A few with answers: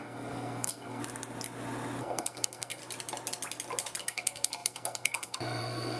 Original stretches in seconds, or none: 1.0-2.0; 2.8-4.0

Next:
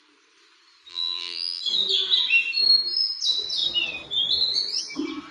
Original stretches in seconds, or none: 0.0-0.9; 1.6-5.3

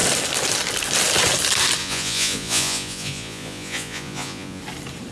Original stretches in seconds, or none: 0.0-1.8; 4.6-5.1

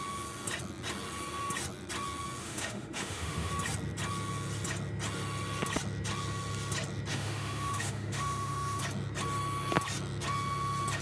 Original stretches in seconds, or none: 0.0-2.4; 3.5-7.1; 8.8-11.0

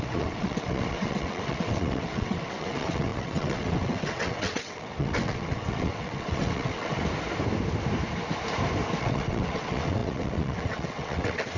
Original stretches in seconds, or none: 7.0-9.0

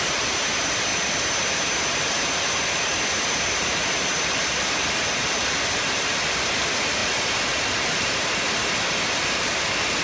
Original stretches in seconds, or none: 0.0-10.0

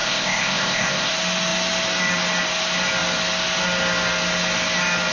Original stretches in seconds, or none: 1.1-5.1